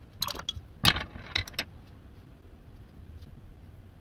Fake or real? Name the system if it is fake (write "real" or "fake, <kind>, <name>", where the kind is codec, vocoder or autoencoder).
real